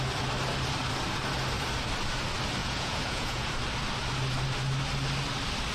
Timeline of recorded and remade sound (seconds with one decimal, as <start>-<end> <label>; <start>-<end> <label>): 0.0-2.6 recorded; 2.6-3.5 remade; 3.5-5.7 recorded